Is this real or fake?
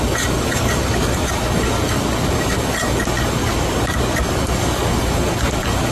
fake